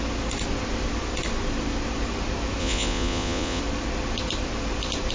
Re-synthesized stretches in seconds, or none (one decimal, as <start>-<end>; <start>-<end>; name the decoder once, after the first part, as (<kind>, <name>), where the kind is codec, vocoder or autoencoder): 2.6-3.6 (vocoder, Vocos)